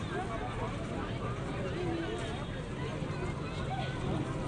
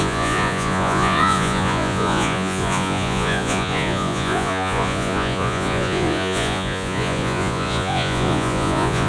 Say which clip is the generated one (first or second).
second